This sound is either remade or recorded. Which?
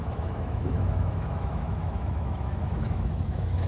remade